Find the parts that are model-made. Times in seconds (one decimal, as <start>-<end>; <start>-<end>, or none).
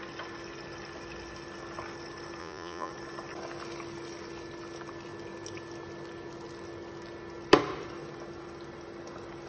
2.4-2.9